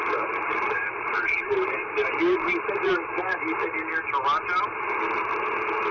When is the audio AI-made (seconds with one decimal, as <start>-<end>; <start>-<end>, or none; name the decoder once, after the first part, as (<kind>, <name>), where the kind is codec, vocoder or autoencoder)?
0.5-3.9 (vocoder, BigVGAN v2)